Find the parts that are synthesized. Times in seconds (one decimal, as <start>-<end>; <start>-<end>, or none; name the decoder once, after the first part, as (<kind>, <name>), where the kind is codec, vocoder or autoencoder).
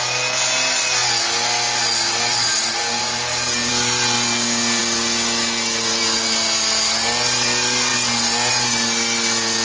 none